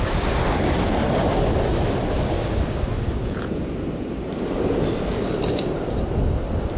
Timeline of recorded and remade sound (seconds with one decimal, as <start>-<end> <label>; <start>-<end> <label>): 0.0-3.2 recorded; 3.2-3.7 remade; 3.7-6.8 recorded